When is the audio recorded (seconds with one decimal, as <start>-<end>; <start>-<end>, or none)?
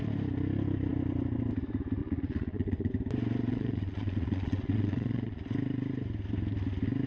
0.0-2.0; 2.9-3.5; 5.4-7.1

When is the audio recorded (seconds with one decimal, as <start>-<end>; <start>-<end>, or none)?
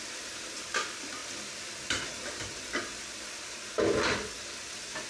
0.0-5.1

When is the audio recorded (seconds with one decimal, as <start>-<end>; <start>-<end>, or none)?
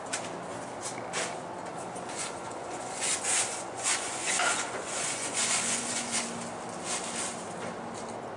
0.0-1.7; 6.2-8.4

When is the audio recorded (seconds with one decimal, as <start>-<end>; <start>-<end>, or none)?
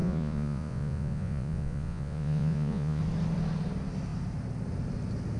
3.0-5.4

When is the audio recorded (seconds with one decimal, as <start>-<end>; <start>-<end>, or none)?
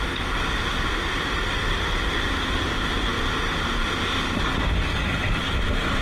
0.0-6.0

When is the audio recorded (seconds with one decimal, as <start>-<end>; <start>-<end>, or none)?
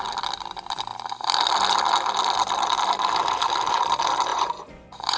0.0-4.3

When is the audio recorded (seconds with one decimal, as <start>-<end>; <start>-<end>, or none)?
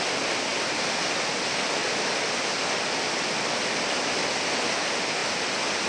0.0-5.9